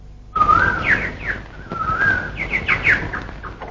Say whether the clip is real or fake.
real